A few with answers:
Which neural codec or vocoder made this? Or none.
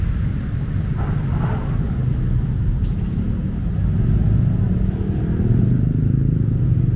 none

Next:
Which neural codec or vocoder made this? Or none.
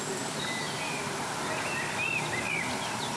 none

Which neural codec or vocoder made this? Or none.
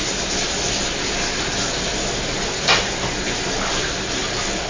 none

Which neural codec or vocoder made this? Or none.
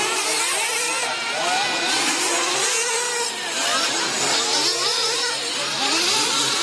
none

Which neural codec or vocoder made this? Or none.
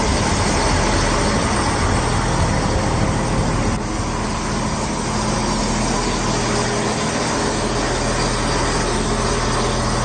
none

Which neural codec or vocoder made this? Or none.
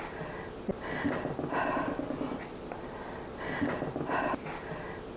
none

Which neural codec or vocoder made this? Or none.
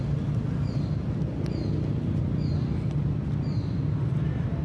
none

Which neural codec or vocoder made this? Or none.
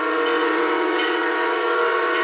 vocoder, WaveNeXt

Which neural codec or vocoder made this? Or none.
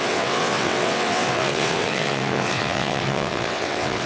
vocoder, WaveNeXt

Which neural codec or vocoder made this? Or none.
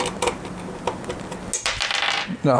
none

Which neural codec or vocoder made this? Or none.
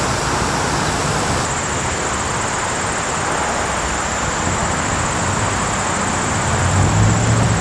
none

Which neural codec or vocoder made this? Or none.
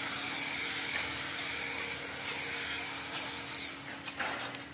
none